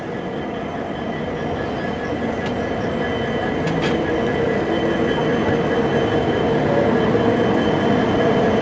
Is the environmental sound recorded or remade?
recorded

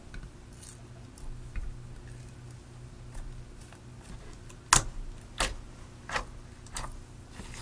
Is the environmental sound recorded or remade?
recorded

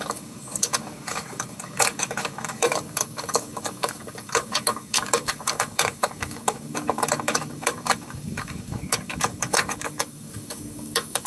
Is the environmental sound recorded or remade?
remade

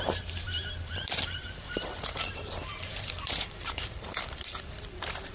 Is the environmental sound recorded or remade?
remade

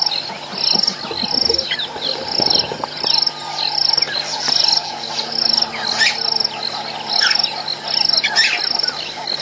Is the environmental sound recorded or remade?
recorded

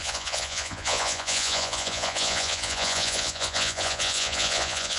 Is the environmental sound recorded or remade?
remade